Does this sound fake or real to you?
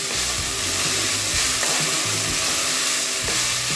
real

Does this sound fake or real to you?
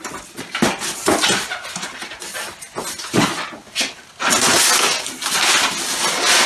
real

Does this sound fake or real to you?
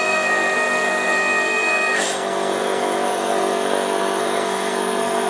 fake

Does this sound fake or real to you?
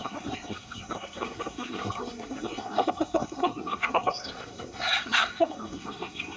fake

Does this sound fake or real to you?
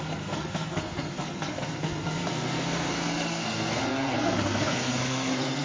fake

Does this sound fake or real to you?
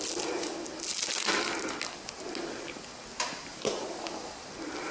real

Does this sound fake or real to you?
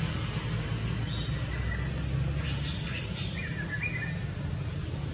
real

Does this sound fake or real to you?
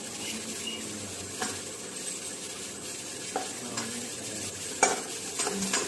real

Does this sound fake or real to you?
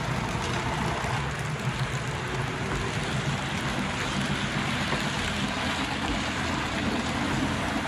real